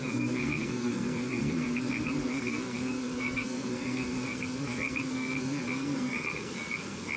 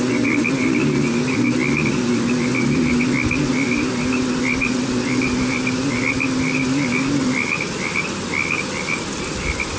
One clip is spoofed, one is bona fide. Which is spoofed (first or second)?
first